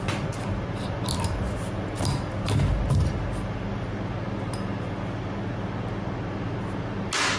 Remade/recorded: recorded